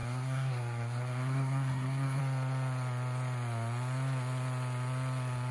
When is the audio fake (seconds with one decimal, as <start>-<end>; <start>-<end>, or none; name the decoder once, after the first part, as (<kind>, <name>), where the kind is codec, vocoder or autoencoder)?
0.0-2.2 (codec, SNAC)

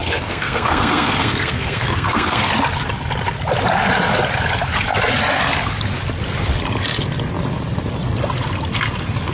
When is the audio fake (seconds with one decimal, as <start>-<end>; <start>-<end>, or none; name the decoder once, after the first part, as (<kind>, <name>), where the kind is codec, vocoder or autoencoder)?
0.0-2.5 (codec, SNAC)

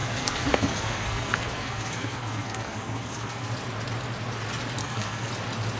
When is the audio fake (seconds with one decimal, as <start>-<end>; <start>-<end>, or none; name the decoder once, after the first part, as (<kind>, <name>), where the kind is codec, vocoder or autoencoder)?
0.0-3.5 (codec, SNAC); 4.8-5.3

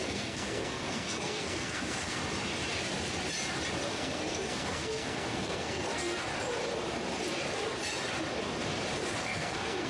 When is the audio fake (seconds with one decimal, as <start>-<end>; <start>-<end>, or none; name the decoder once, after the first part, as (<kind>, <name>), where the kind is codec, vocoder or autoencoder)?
0.0-2.2 (codec, SNAC); 3.9-6.3; 9.2-9.9

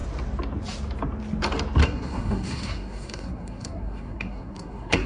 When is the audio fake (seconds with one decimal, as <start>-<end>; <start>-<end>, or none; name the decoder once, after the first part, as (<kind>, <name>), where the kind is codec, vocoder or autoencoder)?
1.8-5.1 (codec, SNAC)

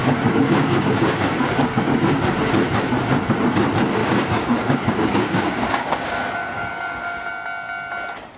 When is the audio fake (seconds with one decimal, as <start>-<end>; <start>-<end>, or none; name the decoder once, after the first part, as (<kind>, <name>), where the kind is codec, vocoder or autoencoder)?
0.0-2.4 (codec, DAC); 4.0-7.3

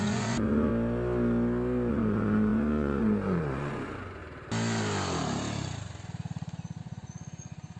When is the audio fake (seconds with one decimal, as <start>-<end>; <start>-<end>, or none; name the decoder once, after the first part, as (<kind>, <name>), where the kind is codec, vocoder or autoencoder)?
0.0-0.7 (vocoder, Vocos); 1.9-4.2; 6.8-7.8